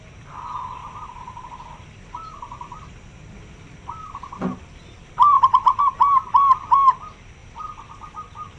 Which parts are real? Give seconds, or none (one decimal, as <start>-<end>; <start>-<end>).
0.0-0.8; 5.8-7.4